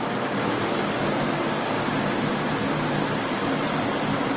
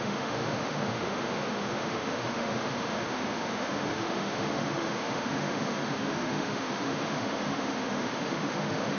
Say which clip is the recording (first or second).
first